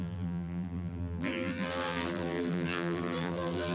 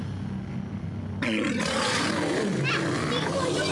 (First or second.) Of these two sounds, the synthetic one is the first